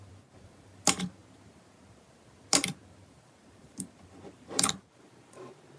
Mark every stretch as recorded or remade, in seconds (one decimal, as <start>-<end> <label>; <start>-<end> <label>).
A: 0.0-5.8 remade